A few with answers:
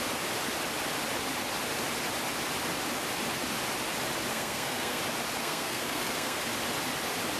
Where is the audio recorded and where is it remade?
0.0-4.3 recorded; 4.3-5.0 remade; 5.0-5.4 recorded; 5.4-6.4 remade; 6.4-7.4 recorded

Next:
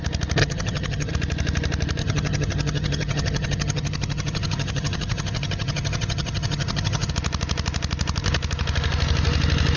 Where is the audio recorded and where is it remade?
0.0-0.4 recorded; 0.4-1.1 remade; 1.1-2.0 recorded; 2.0-7.1 remade; 7.1-9.8 recorded

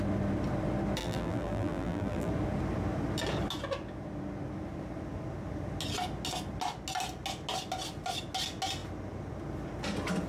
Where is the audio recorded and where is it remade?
0.0-1.0 recorded; 1.0-2.3 remade; 2.3-10.3 recorded

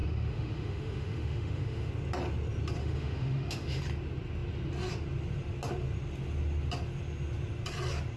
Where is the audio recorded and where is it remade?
0.0-1.9 remade; 1.9-2.8 recorded; 2.8-3.8 remade; 3.8-8.2 recorded

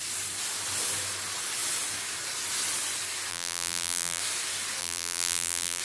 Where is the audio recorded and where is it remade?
0.0-3.3 recorded; 3.3-4.2 remade; 4.2-4.8 recorded; 4.8-5.8 remade

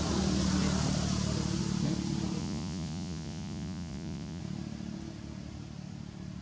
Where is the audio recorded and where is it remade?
0.0-2.4 recorded; 2.4-4.4 remade; 4.4-6.4 recorded

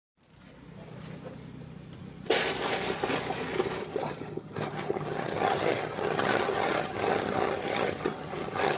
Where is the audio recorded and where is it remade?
0.0-3.8 recorded; 3.8-8.8 remade

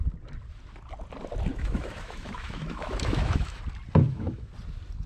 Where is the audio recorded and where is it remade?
0.0-1.5 recorded; 1.5-3.6 remade; 3.6-4.0 recorded; 4.0-4.5 remade; 4.5-5.1 recorded